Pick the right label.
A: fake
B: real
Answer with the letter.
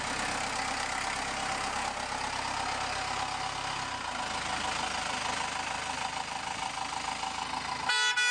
B